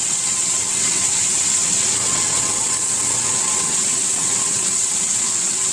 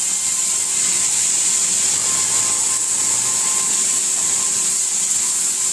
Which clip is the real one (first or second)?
second